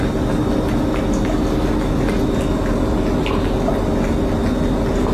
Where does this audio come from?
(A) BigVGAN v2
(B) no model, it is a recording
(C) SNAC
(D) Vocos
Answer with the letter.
B